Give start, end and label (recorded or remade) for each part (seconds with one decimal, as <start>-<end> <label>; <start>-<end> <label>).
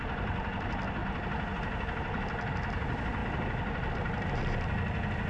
0.0-5.3 recorded